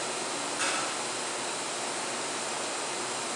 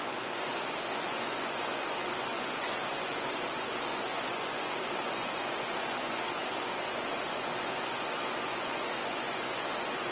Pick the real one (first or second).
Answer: first